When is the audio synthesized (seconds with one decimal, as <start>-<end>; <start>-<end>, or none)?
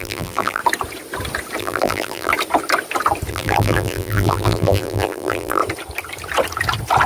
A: 0.0-0.6; 1.6-2.3; 3.3-5.6